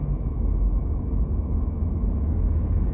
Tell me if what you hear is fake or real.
fake